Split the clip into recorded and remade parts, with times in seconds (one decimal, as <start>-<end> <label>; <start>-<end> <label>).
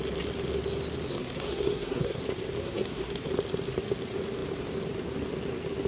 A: 0.0-1.1 recorded; 1.1-2.2 remade; 2.2-2.6 recorded; 2.6-3.3 remade; 3.3-5.9 recorded